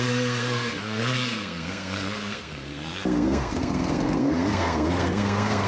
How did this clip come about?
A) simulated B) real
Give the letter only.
A